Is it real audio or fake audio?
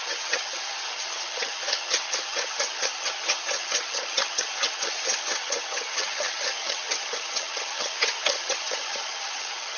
fake